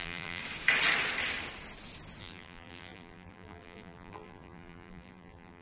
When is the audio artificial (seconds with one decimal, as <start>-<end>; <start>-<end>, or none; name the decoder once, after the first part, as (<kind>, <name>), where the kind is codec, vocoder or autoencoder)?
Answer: 0.0-0.4 (vocoder, BigVGAN v2); 2.2-5.6